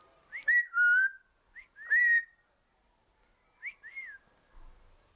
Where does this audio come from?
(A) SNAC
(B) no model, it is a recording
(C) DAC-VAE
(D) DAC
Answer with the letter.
B